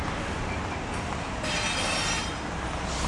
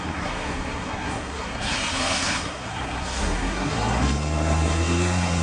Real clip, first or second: first